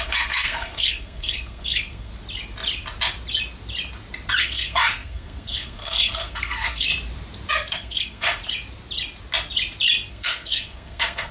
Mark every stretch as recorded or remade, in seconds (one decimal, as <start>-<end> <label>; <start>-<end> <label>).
0.0-2.1 remade; 2.1-4.4 recorded; 4.4-6.9 remade; 6.9-7.5 recorded; 7.5-8.4 remade; 8.4-10.1 recorded; 10.1-11.3 remade